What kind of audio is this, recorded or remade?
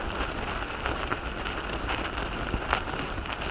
recorded